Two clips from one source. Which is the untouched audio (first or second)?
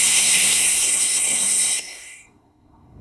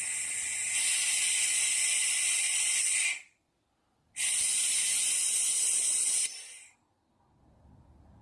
second